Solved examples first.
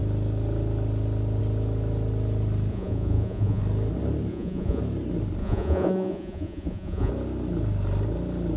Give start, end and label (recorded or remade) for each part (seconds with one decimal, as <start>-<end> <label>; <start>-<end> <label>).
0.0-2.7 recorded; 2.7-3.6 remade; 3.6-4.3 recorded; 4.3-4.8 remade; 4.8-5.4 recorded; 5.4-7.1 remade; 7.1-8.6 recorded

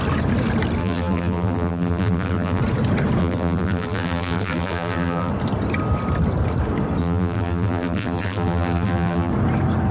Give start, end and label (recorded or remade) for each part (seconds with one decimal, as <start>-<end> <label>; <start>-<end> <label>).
0.0-0.8 recorded; 0.8-2.6 remade; 2.6-3.2 recorded; 3.2-5.3 remade; 5.3-7.0 recorded; 7.0-9.3 remade; 9.3-9.9 recorded

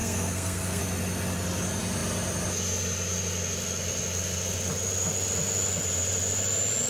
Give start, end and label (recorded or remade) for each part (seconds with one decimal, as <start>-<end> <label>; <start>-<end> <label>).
0.0-0.8 remade; 0.8-6.9 recorded

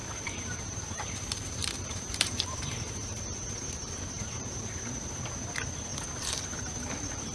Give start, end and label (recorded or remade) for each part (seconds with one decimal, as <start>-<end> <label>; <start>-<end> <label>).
0.0-4.4 remade; 4.4-7.3 recorded

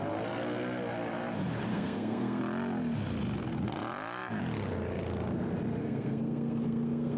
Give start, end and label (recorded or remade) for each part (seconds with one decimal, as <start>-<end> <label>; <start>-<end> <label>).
0.0-1.7 recorded; 1.7-2.4 remade; 2.4-5.8 recorded; 5.8-7.2 remade

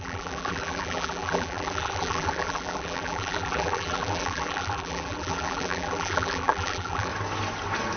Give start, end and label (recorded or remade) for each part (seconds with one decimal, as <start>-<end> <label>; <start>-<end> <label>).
0.0-7.1 remade; 7.1-8.0 recorded

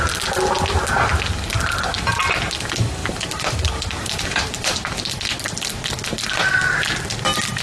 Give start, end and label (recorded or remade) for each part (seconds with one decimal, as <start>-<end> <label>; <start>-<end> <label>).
0.0-3.0 recorded; 3.0-5.0 remade; 5.0-7.6 recorded